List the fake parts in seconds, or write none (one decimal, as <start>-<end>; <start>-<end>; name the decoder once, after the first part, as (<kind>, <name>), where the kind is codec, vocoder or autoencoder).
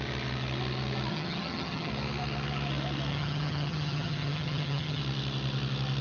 1.1-1.9 (vocoder, HiFi-GAN); 3.1-5.0